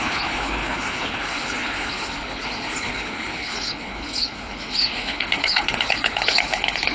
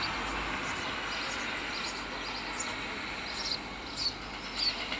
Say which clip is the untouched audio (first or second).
second